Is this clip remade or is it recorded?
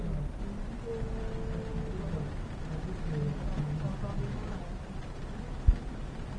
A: recorded